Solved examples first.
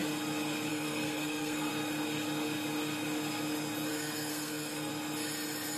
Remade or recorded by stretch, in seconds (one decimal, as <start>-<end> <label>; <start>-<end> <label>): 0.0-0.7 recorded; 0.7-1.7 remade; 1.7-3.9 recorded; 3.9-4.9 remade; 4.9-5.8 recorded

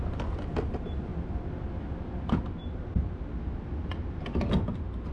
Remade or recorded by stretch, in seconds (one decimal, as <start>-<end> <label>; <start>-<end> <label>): 0.0-5.1 recorded

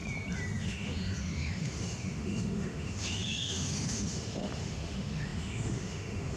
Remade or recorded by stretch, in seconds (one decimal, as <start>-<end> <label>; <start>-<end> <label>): 0.0-0.6 recorded; 0.6-6.4 remade

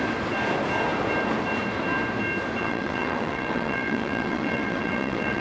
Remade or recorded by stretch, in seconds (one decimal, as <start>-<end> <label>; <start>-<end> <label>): 0.0-2.6 recorded; 2.6-5.4 remade

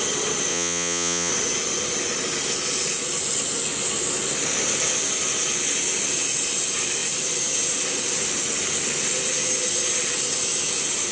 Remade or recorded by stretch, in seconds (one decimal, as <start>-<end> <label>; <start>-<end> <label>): 0.0-0.5 recorded; 0.5-1.3 remade; 1.3-11.1 recorded

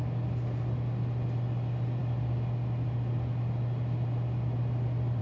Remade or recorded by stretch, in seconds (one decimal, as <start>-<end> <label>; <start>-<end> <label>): 0.0-5.2 recorded

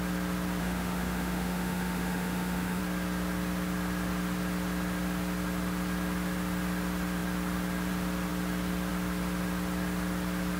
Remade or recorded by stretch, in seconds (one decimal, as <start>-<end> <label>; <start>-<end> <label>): 0.0-0.6 recorded; 0.6-2.8 remade; 2.8-10.6 recorded

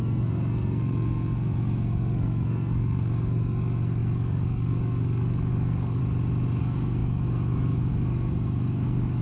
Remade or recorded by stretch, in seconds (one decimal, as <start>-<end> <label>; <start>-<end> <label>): 0.0-6.0 remade; 6.0-6.6 recorded; 6.6-9.2 remade